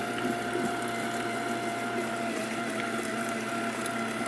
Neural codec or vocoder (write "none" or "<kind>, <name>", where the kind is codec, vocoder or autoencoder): none